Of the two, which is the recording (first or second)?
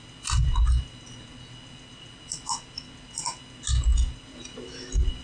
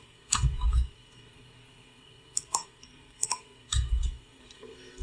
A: first